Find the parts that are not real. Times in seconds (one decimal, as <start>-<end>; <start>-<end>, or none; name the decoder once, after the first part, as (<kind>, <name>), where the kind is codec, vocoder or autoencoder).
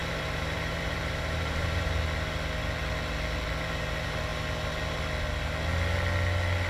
0.0-1.9 (vocoder, BigVGAN v2)